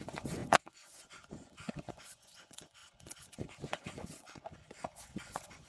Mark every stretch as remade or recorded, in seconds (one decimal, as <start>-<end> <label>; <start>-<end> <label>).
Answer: 0.0-5.7 remade